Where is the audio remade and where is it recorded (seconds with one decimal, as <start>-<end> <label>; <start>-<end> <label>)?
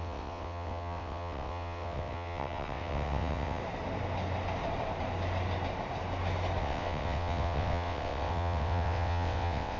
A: 0.0-3.6 remade; 3.6-6.6 recorded; 6.6-9.8 remade